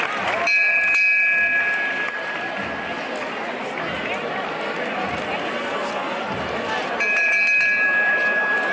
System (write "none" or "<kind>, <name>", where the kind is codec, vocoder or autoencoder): none